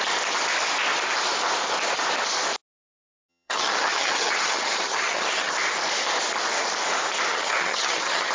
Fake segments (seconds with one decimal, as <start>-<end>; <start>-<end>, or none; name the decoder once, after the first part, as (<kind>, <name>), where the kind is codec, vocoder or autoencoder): 3.3-5.5 (vocoder, HiFi-GAN); 7.3-8.3